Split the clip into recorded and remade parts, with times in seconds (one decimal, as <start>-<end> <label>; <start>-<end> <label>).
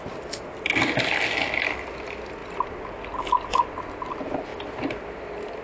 0.0-5.6 recorded